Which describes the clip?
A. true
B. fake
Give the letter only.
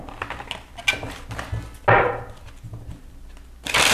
A